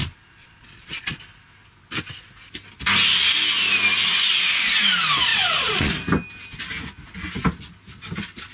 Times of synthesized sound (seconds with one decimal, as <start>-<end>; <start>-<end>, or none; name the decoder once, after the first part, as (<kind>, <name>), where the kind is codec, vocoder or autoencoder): 0.4-1.2 (vocoder, Vocos); 5.3-5.9